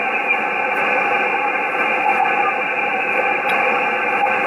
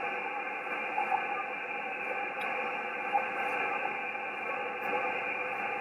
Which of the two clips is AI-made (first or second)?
first